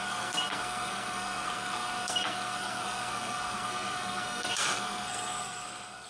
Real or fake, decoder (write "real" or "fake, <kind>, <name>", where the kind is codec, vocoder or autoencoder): fake, codec, SNAC